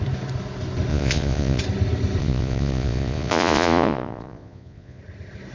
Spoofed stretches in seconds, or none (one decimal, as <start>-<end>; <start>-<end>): 0.9-1.6; 2.2-5.0